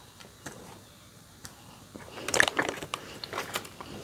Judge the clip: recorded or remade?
remade